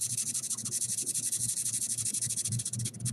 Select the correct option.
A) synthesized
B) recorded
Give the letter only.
A